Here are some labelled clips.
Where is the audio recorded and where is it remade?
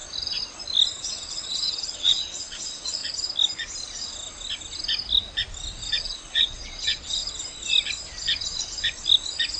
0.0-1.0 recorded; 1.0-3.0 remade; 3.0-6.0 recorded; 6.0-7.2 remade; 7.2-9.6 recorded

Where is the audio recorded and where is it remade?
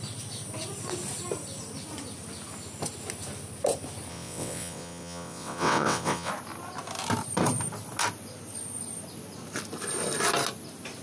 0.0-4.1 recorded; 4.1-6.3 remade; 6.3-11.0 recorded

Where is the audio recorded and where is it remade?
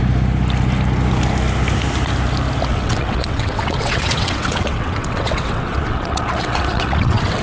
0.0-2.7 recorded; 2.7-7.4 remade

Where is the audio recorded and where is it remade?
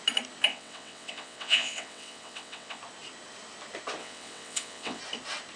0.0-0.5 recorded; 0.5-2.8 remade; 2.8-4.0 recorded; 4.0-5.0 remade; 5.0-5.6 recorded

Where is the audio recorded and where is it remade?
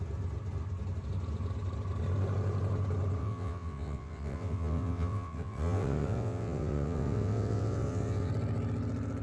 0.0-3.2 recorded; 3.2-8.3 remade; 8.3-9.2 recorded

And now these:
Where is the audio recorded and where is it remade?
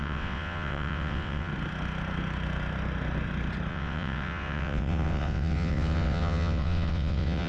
0.0-1.5 remade; 1.5-3.7 recorded; 3.7-7.5 remade